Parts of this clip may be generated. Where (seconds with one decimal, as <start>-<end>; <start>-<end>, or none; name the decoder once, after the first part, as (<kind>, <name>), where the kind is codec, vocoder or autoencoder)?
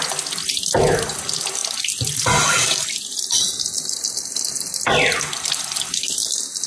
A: none